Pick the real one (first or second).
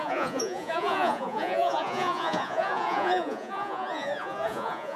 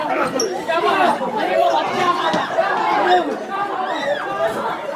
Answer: second